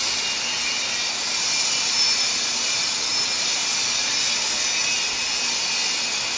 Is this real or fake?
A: real